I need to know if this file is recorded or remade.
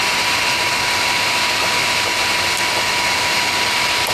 recorded